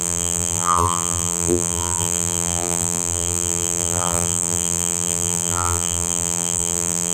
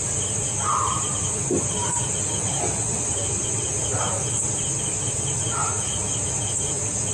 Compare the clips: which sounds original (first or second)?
second